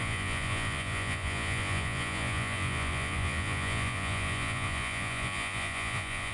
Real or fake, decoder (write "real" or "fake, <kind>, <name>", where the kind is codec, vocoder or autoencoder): fake, vocoder, Vocos